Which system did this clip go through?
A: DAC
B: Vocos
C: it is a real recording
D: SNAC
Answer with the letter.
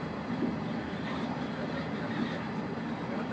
C